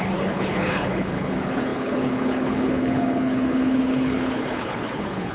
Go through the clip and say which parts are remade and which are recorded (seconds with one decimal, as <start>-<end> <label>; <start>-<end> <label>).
0.0-5.3 remade